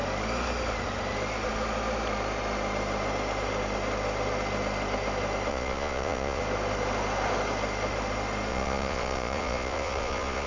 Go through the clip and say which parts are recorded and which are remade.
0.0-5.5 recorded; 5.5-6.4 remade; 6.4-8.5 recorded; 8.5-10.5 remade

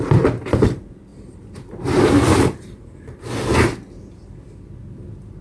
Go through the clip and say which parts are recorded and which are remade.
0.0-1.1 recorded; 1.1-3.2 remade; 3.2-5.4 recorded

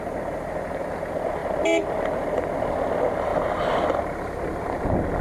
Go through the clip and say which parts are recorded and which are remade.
0.0-5.2 recorded

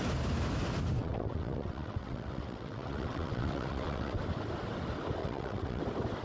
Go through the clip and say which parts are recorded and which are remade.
0.0-1.0 recorded; 1.0-4.2 remade; 4.2-5.2 recorded; 5.2-5.8 remade; 5.8-6.2 recorded

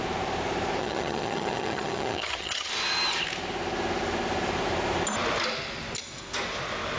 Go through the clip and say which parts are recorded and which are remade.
0.0-0.8 recorded; 0.8-2.7 remade; 2.7-7.0 recorded

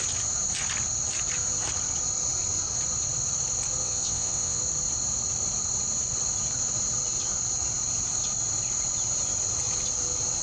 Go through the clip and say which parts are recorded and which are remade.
0.0-3.8 recorded; 3.8-4.6 remade; 4.6-10.4 recorded